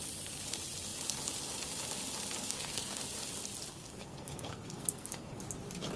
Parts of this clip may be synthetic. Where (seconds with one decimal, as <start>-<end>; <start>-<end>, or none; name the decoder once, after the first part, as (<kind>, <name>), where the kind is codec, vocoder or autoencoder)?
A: 2.4-3.0 (codec, SNAC); 3.7-5.4